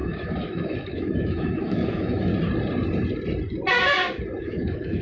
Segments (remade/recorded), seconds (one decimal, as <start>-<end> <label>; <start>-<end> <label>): 0.0-2.3 remade; 2.3-4.4 recorded; 4.4-5.0 remade